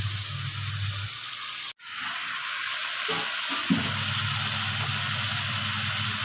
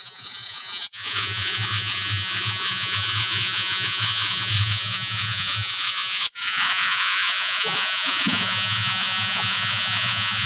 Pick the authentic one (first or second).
first